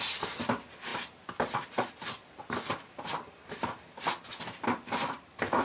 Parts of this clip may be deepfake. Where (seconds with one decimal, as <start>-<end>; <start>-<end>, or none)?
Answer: none